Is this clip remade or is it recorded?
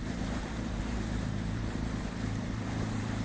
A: remade